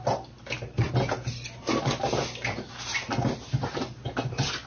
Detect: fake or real real